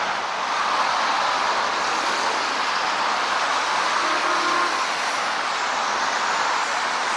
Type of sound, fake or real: real